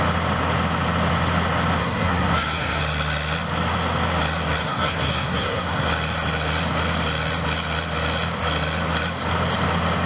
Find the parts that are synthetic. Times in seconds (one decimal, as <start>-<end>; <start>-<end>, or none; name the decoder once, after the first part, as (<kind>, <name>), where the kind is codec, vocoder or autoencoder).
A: 1.8-2.8 (codec, SNAC); 4.6-5.9